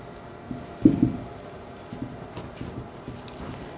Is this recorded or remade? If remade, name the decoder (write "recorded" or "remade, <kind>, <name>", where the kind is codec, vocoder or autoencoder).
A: recorded